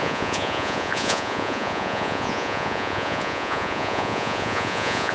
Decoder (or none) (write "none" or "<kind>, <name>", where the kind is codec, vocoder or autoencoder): vocoder, Vocos